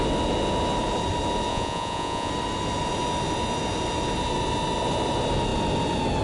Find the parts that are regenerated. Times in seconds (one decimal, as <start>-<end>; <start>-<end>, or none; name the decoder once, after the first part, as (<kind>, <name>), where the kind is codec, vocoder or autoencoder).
1.5-2.3 (vocoder, Vocos)